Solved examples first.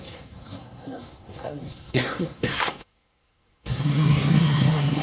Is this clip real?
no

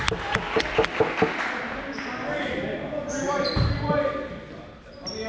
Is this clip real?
yes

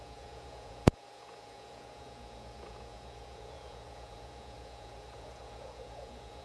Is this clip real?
no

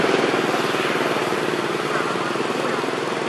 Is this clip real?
yes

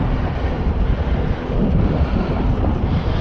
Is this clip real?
yes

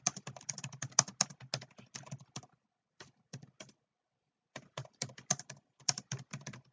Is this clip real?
yes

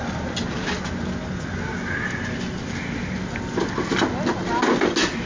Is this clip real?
yes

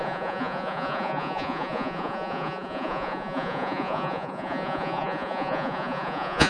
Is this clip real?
no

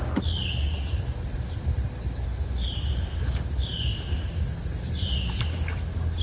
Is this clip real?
yes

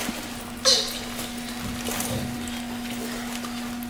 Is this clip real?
yes